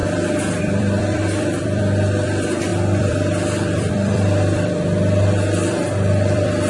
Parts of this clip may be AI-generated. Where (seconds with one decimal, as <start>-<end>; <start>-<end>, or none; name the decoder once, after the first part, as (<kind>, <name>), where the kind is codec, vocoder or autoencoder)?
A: 0.6-6.7 (vocoder, BigVGAN v2)